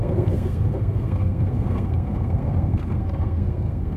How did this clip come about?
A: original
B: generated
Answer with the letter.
B